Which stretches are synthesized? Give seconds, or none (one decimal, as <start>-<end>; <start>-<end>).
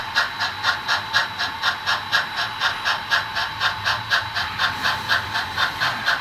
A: 0.0-1.2; 1.8-6.2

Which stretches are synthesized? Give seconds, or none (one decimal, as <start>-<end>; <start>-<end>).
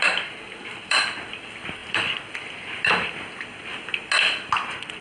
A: 0.0-1.8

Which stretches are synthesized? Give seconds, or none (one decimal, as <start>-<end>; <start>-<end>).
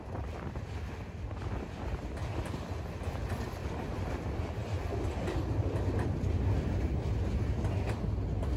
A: 3.6-4.1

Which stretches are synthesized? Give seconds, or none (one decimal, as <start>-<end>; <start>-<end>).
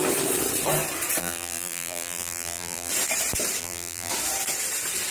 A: 1.2-2.9; 3.6-4.1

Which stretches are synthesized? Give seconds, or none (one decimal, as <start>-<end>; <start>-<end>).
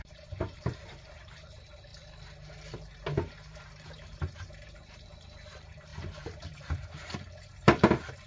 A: 0.0-1.9; 2.9-8.3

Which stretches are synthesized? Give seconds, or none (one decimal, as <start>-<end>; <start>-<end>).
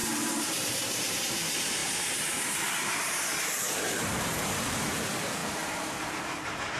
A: 0.0-5.4; 6.0-6.8